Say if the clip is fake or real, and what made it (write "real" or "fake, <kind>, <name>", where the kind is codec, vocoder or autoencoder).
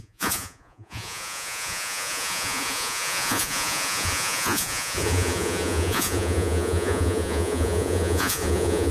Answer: fake, vocoder, Vocos